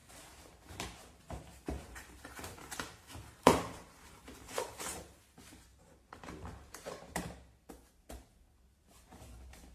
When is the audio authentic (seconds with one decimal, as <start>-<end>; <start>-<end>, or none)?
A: 5.2-5.7; 7.2-9.7